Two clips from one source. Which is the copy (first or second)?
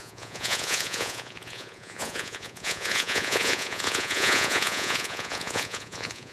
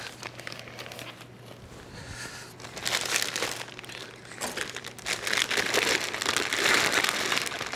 first